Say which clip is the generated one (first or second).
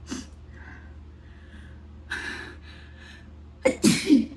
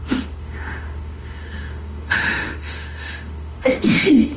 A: second